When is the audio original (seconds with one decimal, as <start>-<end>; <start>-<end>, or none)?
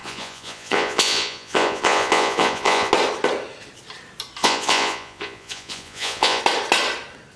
2.9-4.4; 6.4-7.4